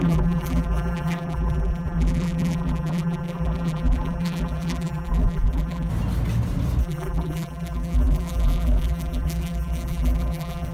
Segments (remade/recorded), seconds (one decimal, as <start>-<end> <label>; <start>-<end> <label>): 0.0-5.9 remade; 5.9-6.8 recorded; 6.8-10.7 remade